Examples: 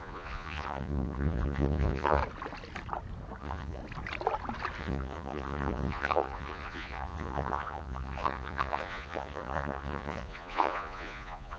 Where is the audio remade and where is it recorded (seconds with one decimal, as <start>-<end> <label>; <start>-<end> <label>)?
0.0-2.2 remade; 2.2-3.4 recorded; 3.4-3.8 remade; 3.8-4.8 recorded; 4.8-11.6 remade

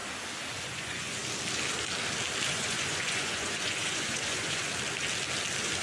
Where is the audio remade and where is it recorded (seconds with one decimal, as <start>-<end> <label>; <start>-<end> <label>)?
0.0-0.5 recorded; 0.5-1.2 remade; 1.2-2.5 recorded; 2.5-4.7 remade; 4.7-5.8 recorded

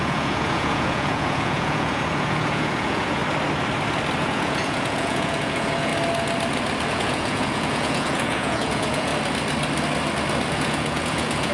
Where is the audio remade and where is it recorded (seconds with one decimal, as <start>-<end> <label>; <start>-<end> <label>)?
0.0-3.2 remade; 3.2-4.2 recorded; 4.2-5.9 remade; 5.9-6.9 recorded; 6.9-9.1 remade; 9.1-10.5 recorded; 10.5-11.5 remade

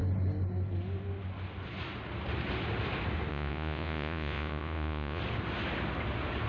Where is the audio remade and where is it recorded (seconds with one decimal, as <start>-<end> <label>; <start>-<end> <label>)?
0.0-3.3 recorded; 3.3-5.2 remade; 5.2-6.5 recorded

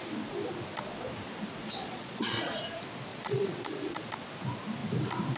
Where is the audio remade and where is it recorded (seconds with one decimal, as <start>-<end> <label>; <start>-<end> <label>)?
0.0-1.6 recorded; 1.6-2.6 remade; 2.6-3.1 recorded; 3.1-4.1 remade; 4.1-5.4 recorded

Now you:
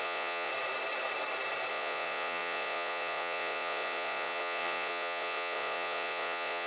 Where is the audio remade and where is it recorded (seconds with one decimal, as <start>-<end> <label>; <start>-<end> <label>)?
0.0-0.5 remade; 0.5-1.7 recorded; 1.7-6.7 remade

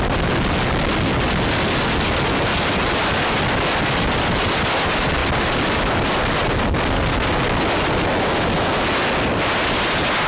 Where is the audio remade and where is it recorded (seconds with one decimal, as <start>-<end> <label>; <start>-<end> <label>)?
0.0-10.3 recorded

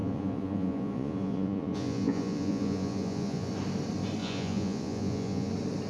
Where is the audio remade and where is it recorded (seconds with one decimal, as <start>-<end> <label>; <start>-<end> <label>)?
0.0-3.5 remade; 3.5-4.2 recorded; 4.2-5.5 remade; 5.5-5.9 recorded